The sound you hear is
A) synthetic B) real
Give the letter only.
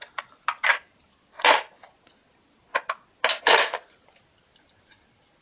B